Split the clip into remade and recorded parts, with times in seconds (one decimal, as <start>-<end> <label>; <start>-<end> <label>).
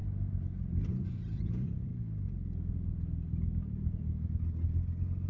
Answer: 0.0-0.9 recorded; 0.9-1.9 remade; 1.9-5.3 recorded